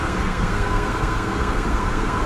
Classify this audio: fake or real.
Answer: fake